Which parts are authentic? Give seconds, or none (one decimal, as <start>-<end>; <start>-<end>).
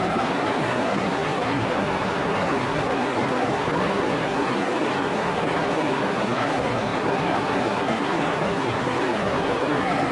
none